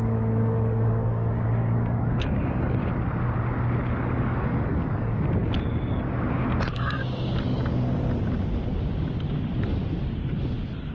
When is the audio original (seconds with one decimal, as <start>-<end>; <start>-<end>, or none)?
2.8-3.8; 5.4-6.6; 7.0-10.9